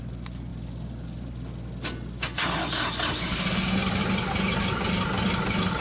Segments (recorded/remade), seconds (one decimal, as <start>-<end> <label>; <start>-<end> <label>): 0.0-5.8 recorded